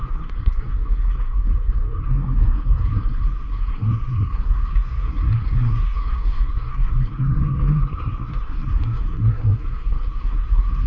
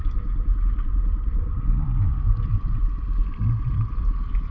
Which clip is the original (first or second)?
second